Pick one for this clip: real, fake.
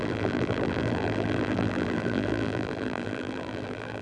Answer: fake